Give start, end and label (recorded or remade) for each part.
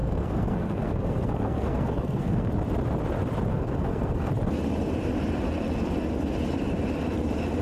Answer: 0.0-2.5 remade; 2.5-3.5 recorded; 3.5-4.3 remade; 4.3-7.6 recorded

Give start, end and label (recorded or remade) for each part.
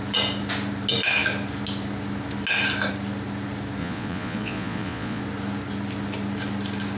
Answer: 0.0-3.8 recorded; 3.8-5.2 remade; 5.2-7.0 recorded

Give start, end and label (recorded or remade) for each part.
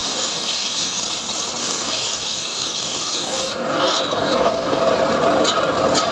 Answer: 0.0-1.0 remade; 1.0-1.6 recorded; 1.6-4.8 remade; 4.8-6.1 recorded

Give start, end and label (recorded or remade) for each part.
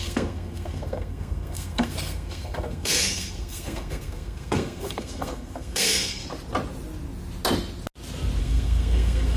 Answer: 0.0-6.2 remade; 6.2-8.4 recorded; 8.4-9.4 remade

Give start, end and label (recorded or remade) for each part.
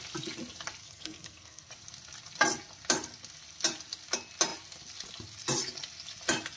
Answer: 0.0-0.8 recorded; 0.8-1.7 remade; 1.7-6.6 recorded